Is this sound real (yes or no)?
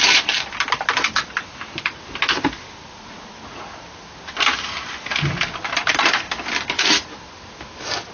yes